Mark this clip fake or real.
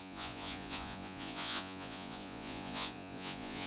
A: fake